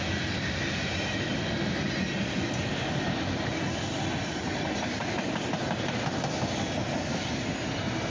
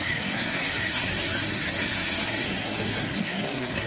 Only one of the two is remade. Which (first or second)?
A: second